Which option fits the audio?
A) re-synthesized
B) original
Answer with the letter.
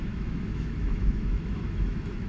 A